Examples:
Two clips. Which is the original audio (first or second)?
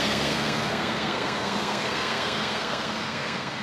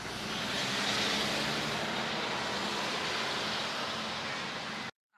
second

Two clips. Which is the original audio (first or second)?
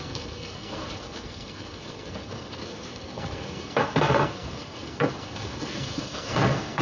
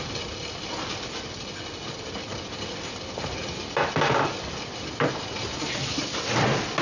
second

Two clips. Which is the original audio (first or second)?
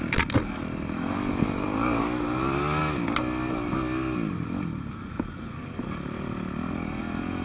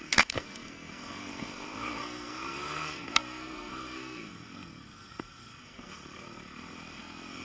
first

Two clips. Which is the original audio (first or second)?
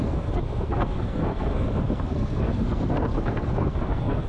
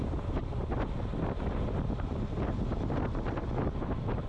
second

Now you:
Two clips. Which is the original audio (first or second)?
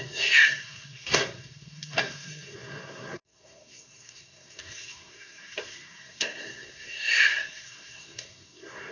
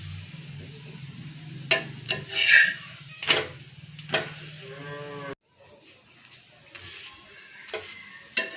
second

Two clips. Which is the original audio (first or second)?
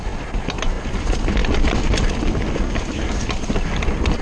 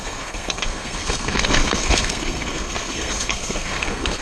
first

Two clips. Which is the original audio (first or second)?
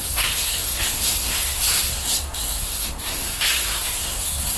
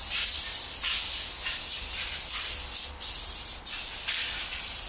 second